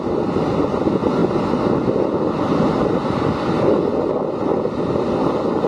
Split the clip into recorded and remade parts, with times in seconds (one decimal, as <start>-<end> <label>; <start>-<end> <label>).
0.0-5.7 recorded